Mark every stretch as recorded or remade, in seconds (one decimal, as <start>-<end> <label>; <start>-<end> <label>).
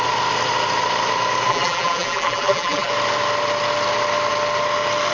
0.0-1.5 recorded; 1.5-2.9 remade; 2.9-5.1 recorded